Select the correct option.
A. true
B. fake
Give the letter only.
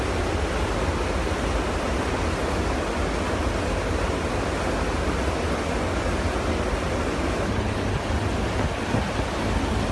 A